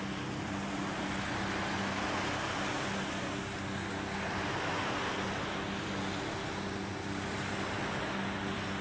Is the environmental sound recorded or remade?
recorded